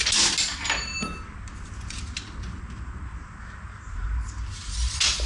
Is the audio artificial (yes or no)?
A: no